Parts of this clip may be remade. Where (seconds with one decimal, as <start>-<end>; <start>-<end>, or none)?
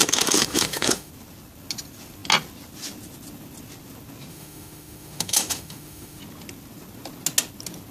0.0-1.1; 4.3-6.2